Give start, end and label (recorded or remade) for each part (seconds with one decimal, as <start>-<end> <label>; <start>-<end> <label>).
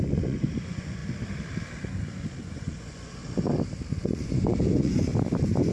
0.0-1.0 remade; 1.0-2.4 recorded; 2.4-3.2 remade; 3.2-3.9 recorded; 3.9-5.1 remade; 5.1-5.7 recorded